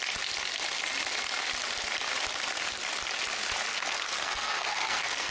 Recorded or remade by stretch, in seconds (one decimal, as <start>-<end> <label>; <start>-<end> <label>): 0.0-3.7 recorded; 3.7-5.3 remade